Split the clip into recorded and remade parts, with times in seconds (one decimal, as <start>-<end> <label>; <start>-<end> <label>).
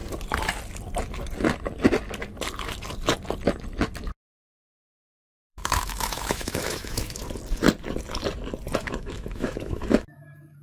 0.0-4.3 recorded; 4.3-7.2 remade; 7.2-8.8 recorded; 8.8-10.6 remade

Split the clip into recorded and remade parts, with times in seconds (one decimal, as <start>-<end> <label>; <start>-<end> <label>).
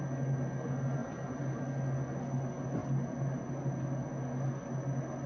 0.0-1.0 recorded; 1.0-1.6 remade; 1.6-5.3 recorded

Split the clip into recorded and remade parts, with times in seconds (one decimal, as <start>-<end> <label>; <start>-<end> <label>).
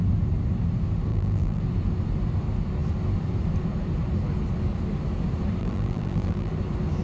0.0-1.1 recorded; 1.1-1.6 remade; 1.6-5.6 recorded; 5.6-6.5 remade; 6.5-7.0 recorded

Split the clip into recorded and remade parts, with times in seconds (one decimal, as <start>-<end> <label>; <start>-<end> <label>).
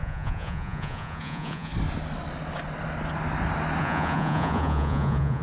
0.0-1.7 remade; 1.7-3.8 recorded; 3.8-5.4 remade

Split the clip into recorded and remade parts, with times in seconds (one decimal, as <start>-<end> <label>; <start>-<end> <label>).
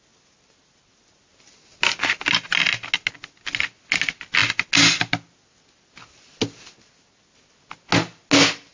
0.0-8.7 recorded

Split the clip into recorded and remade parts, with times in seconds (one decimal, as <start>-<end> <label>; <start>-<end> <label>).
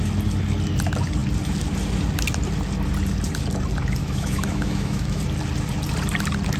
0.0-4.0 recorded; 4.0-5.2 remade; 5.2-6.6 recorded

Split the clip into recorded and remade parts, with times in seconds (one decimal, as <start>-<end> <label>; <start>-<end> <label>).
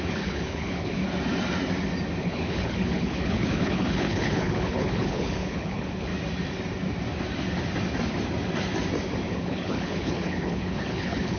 0.0-1.0 remade; 1.0-2.2 recorded; 2.2-6.1 remade; 6.1-9.3 recorded; 9.3-11.4 remade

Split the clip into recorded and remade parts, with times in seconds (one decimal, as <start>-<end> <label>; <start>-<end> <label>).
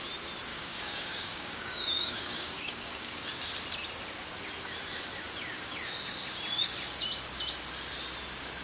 0.0-0.5 recorded; 0.5-3.2 remade; 3.2-8.6 recorded